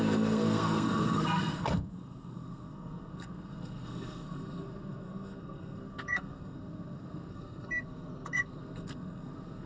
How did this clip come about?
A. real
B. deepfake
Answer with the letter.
B